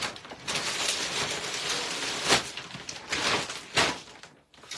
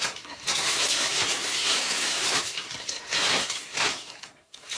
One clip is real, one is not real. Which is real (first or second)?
first